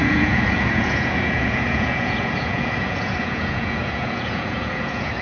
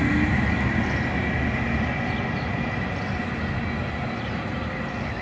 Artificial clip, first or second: first